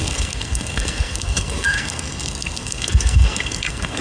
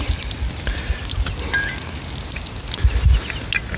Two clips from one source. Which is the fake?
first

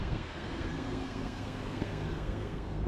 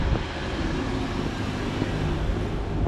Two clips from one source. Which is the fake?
first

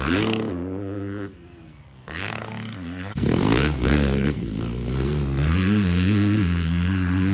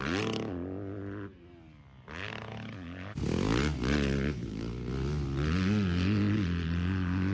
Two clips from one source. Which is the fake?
first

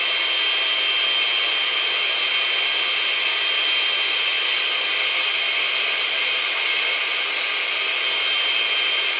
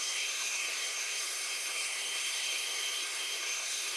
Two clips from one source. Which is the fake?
second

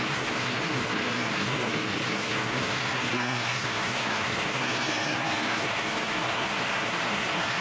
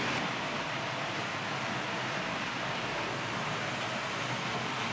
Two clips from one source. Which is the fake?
first